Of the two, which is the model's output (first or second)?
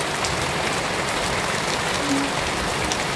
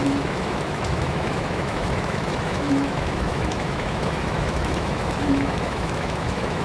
second